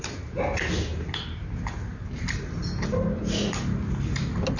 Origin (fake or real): real